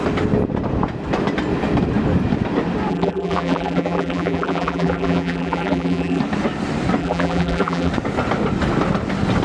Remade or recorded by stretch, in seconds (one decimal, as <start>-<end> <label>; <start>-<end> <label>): 0.0-2.9 recorded; 2.9-6.2 remade; 6.2-7.0 recorded; 7.0-7.9 remade; 7.9-9.4 recorded

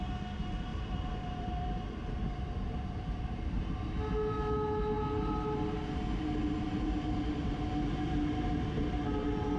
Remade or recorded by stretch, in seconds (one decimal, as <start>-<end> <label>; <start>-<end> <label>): 0.0-0.7 recorded; 0.7-3.6 remade; 3.6-6.4 recorded; 6.4-7.5 remade; 7.5-9.6 recorded